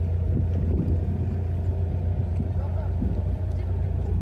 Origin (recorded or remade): recorded